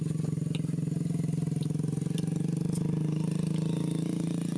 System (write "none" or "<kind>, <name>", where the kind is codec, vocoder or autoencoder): none